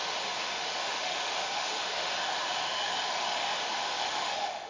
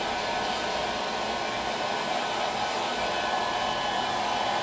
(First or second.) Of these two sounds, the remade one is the first